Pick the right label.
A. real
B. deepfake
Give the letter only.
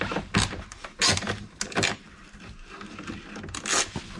A